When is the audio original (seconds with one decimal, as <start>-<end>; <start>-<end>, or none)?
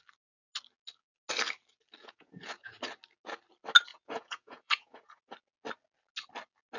0.0-2.0; 2.8-3.9; 5.3-6.8